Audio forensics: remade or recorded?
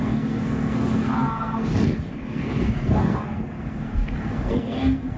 remade